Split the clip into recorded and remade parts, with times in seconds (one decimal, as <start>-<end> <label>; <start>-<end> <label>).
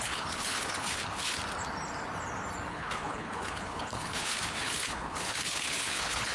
0.0-1.4 remade; 1.4-2.7 recorded; 2.7-6.3 remade